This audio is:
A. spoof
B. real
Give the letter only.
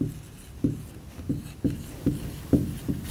B